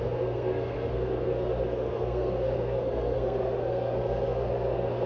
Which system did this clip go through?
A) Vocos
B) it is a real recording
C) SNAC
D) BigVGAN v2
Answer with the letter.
C